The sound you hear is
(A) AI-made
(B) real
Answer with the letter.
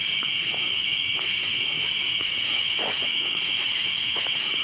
A